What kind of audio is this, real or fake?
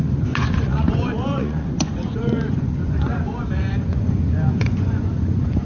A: fake